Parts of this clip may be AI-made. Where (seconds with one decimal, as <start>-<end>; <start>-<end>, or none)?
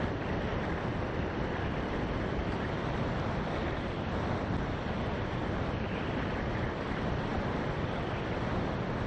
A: 0.0-9.1